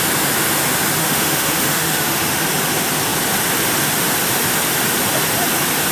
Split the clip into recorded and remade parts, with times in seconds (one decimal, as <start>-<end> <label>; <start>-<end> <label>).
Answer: 0.0-1.0 recorded; 1.0-2.4 remade; 2.4-5.9 recorded